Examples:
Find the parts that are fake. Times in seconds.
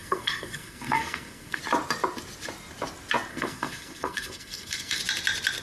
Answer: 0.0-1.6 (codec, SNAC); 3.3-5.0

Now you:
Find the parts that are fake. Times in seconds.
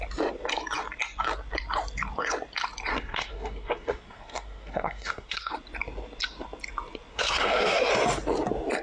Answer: 2.9-5.5 (codec, SNAC); 7.1-7.9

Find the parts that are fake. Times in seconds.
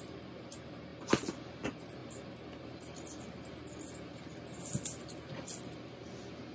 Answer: none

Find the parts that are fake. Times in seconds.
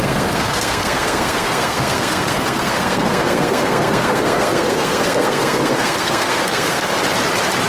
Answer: 0.0-6.9 (codec, SNAC)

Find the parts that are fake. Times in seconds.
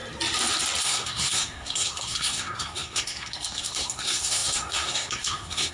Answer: 0.8-5.7 (codec, SNAC)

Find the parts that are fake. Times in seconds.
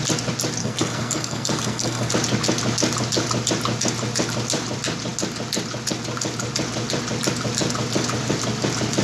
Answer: 0.6-2.1 (codec, SNAC)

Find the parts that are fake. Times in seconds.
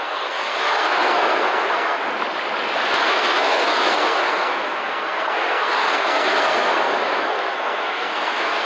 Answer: 0.0-2.0 (codec, SNAC); 3.0-8.7